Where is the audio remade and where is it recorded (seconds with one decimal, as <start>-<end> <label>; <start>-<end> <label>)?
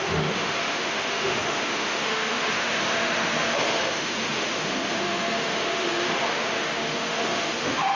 0.0-8.0 remade